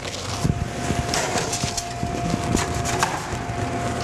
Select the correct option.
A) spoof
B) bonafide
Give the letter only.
B